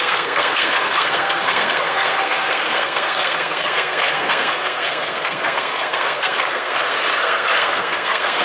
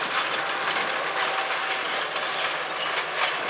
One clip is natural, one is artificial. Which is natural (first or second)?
second